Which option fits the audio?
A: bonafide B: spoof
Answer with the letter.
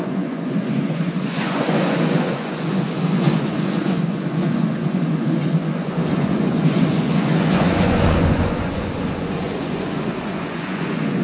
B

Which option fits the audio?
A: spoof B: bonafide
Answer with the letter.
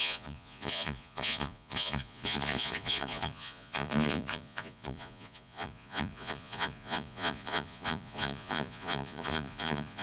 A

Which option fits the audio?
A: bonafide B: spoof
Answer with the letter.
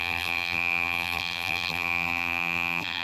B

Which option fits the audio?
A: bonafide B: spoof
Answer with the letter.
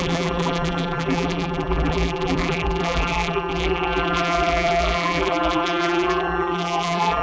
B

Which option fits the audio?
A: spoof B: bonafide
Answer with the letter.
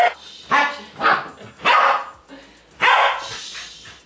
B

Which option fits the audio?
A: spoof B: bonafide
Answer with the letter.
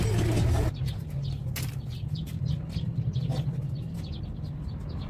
B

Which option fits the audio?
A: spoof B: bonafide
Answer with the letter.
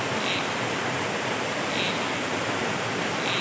B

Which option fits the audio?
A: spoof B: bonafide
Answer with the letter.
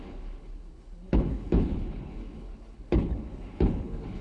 A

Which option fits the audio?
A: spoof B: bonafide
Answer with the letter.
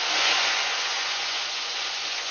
A